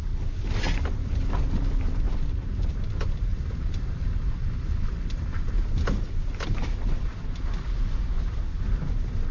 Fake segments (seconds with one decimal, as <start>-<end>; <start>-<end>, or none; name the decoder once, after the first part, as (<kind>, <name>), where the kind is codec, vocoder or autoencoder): 3.3-5.2 (vocoder, BigVGAN v2)